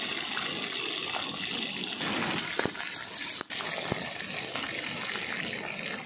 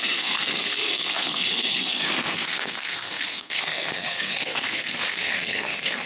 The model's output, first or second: second